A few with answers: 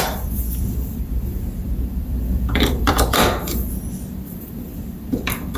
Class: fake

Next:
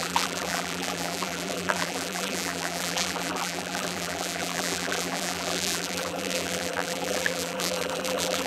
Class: fake